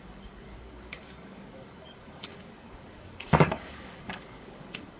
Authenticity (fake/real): fake